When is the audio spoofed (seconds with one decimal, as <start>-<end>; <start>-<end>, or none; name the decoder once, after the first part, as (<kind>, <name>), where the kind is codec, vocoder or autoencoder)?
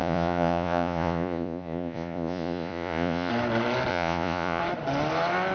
0.0-3.3 (vocoder, Vocos); 3.9-4.6